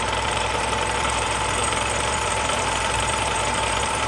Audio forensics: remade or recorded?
remade